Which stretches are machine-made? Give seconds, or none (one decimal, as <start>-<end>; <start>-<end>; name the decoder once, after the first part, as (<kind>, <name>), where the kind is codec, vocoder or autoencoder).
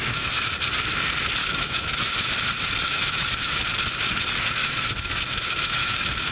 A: 0.0-0.5 (autoencoder, DAC-VAE); 1.4-2.3; 2.8-3.6; 4.6-6.3